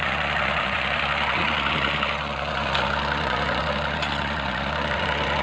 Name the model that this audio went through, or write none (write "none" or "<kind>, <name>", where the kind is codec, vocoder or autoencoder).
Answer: vocoder, Vocos